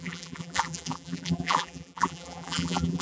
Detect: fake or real fake